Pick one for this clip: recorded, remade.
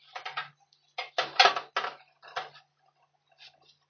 recorded